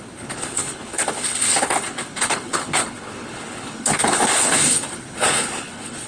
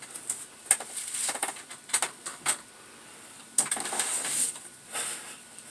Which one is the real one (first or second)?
second